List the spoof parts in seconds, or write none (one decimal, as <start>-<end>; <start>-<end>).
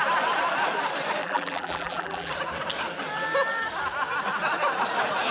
1.2-2.3